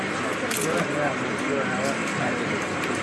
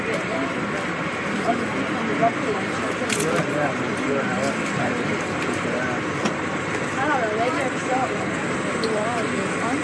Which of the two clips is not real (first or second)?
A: second